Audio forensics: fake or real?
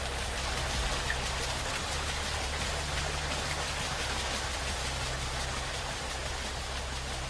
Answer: real